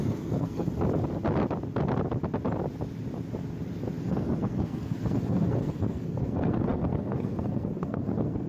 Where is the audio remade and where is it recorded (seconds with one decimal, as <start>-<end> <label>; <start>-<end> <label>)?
0.0-0.7 remade; 0.7-4.0 recorded; 4.0-8.5 remade